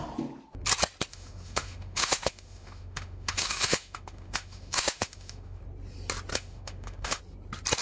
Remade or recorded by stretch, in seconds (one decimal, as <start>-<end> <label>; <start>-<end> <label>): 0.0-1.1 recorded; 1.1-5.6 remade; 5.6-6.3 recorded; 6.3-7.2 remade; 7.2-7.8 recorded